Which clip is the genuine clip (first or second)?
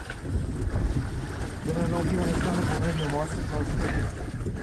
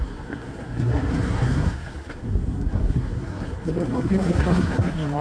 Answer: first